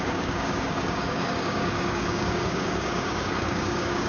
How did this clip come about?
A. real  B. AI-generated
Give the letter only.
B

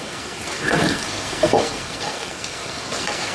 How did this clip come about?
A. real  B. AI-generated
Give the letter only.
B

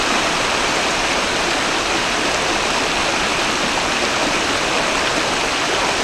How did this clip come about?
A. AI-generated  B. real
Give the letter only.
B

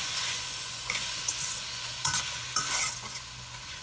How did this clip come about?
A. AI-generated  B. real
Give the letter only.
A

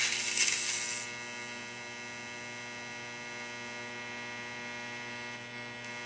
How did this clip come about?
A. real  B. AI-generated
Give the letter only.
A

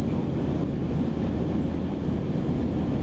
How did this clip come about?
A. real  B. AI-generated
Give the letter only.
A